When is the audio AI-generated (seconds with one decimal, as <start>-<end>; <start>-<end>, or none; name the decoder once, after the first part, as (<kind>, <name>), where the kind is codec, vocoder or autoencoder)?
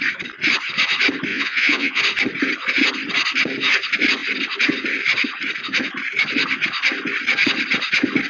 1.3-2.0 (vocoder, Vocos)